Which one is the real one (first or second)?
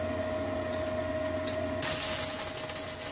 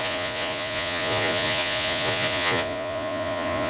first